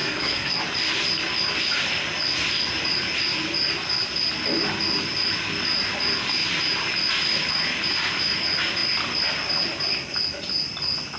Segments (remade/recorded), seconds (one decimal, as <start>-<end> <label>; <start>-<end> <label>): 0.0-0.6 remade; 0.6-11.2 recorded